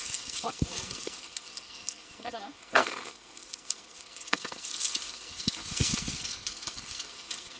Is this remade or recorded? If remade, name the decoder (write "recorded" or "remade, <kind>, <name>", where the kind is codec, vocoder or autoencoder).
remade, codec, SNAC